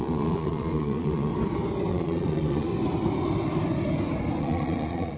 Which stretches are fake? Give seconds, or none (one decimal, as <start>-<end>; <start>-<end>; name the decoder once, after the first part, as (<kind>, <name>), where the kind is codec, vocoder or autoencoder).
0.0-1.3 (vocoder, Vocos); 1.9-2.7; 4.4-5.2